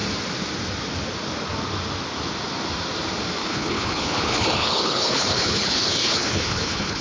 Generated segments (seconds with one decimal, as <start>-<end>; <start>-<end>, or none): 3.4-7.0